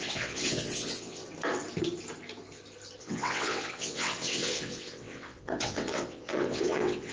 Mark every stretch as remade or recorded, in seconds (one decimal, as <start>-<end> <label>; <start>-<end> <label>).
0.0-1.2 remade; 1.2-3.0 recorded; 3.0-7.1 remade